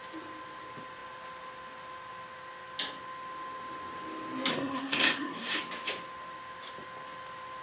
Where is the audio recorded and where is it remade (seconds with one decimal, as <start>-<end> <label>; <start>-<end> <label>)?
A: 0.0-4.5 recorded; 4.5-5.6 remade; 5.6-7.6 recorded